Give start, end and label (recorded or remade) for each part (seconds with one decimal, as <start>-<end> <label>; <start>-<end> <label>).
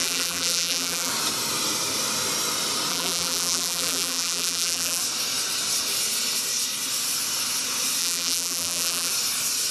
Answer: 0.0-1.1 remade; 1.1-2.9 recorded; 2.9-5.0 remade; 5.0-8.0 recorded; 8.0-9.1 remade; 9.1-9.7 recorded